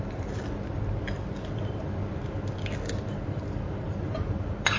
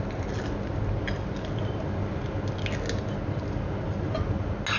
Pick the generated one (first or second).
first